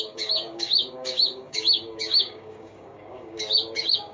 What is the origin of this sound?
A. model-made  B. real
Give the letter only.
A